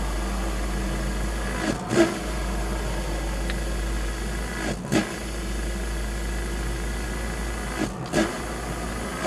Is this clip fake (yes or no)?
no